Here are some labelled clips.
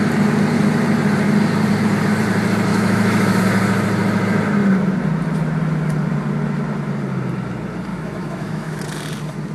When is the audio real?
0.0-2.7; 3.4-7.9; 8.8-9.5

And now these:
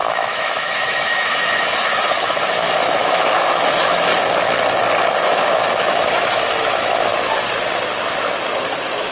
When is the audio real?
4.1-5.1; 7.1-8.6

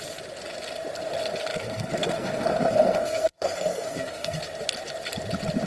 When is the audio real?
0.0-1.5; 4.4-5.7